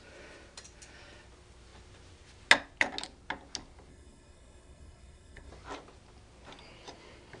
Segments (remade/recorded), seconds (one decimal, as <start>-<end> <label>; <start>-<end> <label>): 0.0-3.9 recorded; 3.9-5.5 remade; 5.5-7.4 recorded